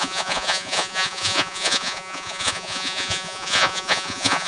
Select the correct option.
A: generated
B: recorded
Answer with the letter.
A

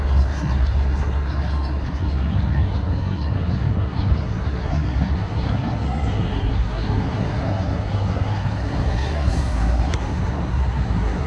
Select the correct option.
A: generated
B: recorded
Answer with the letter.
A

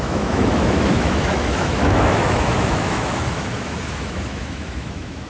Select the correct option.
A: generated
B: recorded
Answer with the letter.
A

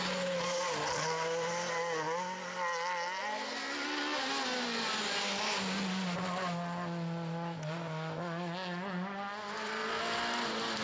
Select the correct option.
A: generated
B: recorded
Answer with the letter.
B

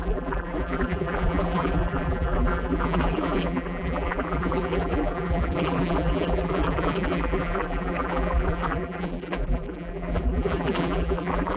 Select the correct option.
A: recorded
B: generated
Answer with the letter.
B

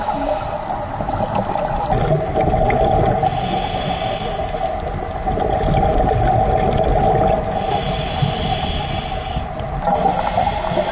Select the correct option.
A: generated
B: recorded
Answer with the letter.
B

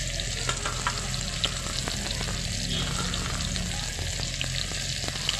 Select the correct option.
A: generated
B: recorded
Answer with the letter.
B